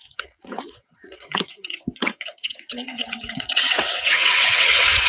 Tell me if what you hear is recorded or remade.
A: remade